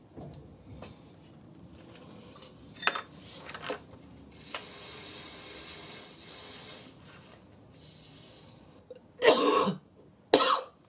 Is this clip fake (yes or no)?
no